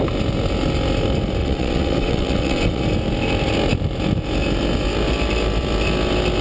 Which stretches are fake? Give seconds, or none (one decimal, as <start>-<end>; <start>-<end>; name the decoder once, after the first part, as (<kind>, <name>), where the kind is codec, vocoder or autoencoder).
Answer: 1.4-2.8 (vocoder, WaveNeXt)